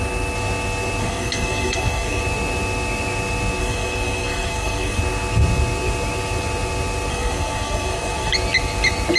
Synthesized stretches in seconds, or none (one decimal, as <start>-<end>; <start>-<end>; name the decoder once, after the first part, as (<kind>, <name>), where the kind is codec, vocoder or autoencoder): 1.0-2.2 (codec, SNAC); 3.6-5.0; 7.1-8.3